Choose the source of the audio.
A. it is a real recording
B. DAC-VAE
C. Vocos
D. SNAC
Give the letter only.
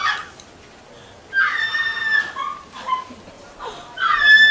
A